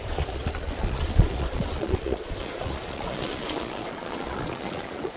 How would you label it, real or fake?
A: fake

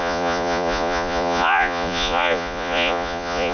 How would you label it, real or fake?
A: fake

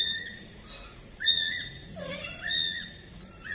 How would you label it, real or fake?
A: fake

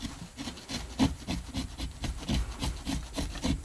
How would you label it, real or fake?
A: real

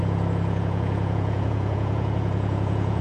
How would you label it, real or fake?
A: fake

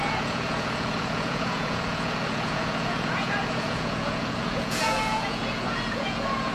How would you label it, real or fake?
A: fake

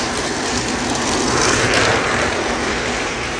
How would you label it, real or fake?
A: real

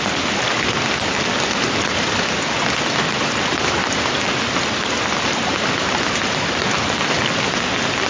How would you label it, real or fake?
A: real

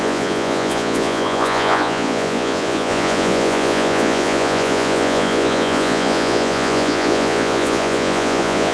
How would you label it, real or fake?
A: fake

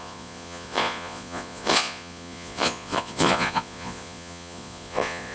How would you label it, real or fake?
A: fake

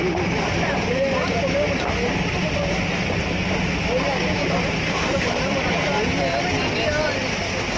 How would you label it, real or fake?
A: real